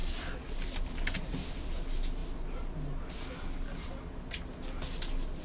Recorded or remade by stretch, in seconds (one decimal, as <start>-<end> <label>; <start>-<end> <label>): 0.0-5.4 recorded